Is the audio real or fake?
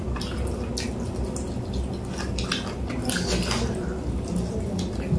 real